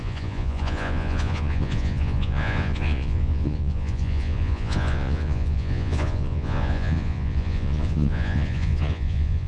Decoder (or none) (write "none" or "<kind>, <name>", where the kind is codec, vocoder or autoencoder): vocoder, Vocos